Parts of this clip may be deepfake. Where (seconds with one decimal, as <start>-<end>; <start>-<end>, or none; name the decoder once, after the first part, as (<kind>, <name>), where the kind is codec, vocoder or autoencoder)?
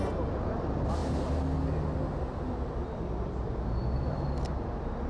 none